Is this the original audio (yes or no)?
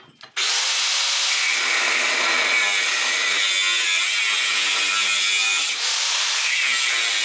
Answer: yes